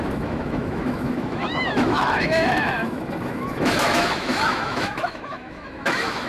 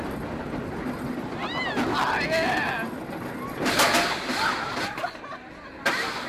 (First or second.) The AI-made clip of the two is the first